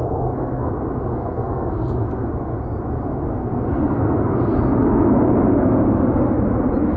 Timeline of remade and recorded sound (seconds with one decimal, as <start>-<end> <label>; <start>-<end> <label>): 0.0-0.7 remade; 0.7-1.1 recorded; 1.1-2.3 remade; 2.3-3.3 recorded; 3.3-4.6 remade; 4.6-7.0 recorded